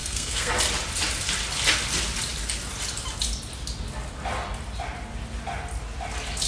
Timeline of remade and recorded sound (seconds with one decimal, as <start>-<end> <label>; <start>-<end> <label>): 0.0-0.5 remade; 0.5-6.5 recorded